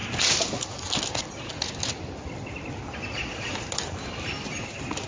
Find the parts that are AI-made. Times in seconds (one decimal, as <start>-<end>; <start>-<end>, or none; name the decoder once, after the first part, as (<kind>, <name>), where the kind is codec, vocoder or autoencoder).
none